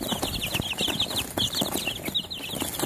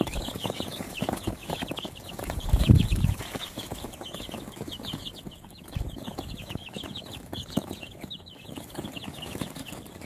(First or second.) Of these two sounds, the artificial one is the second